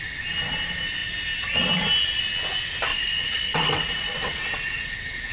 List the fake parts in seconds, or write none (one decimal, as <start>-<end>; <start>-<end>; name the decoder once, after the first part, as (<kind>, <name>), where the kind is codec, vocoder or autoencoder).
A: 2.9-5.3 (vocoder, WaveNeXt)